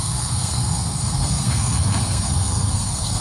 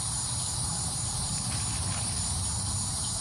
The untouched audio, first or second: second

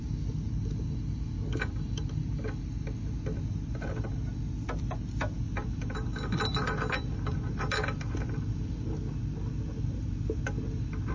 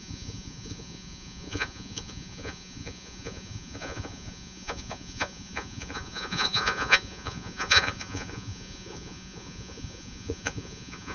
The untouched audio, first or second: first